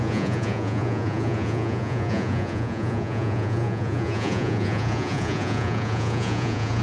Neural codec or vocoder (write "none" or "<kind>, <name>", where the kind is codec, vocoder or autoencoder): vocoder, Vocos